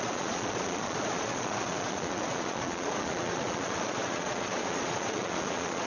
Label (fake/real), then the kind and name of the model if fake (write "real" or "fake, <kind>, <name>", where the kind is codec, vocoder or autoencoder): fake, vocoder, Vocos